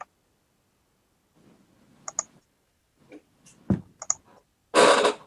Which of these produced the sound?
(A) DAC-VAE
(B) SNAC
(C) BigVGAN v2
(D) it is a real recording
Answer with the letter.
D